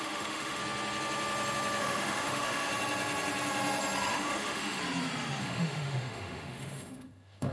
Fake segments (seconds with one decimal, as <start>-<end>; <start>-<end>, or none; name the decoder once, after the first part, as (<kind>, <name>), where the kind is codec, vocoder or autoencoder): 0.0-0.6 (autoencoder, DAC-VAE); 1.8-2.7; 4.1-4.8; 5.4-7.5